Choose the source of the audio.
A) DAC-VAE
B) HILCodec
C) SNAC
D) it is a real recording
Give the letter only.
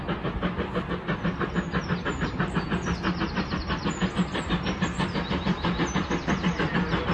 D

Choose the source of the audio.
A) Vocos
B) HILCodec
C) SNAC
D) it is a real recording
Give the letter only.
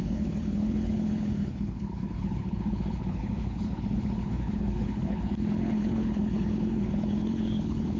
B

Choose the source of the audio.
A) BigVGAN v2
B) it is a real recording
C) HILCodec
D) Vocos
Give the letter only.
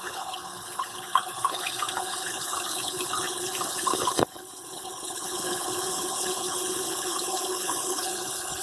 C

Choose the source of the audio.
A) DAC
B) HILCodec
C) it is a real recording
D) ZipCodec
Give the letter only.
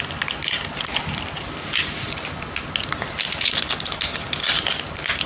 C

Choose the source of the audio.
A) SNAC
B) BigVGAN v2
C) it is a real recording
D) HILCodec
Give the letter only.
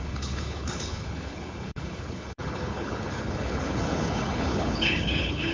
D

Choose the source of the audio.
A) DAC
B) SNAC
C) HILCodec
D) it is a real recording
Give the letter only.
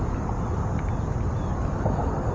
D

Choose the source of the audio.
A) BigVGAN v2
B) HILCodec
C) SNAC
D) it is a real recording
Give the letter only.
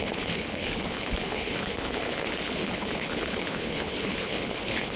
B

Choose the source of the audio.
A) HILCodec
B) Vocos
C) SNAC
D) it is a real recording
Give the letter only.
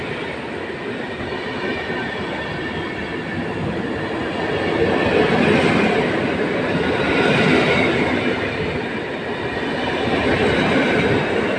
D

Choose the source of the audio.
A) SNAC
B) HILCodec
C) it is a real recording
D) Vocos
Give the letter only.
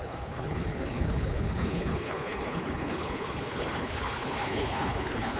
B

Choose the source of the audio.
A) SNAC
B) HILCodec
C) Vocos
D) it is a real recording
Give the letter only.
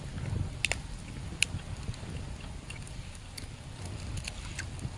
D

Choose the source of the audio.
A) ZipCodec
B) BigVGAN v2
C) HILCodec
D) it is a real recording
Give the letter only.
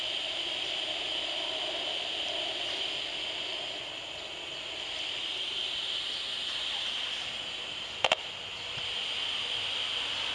D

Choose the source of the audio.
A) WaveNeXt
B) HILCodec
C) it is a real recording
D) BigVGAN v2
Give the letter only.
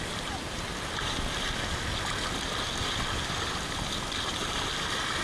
C